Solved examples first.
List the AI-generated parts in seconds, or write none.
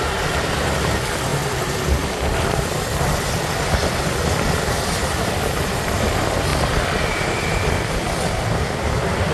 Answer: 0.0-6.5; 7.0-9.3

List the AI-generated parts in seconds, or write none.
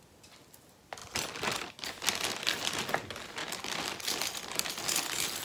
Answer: none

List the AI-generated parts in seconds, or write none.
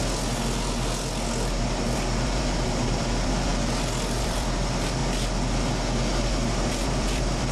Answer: 1.6-3.5; 4.2-5.0; 6.3-7.5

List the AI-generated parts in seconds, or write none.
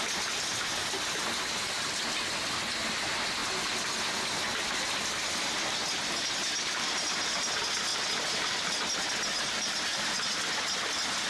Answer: none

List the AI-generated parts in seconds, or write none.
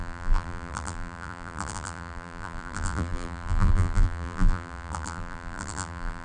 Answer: 0.0-6.2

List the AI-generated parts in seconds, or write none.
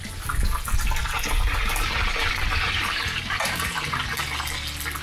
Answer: 1.0-4.0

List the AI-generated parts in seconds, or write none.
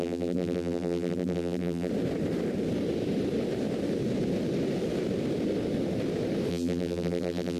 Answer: 0.0-1.9; 6.5-7.6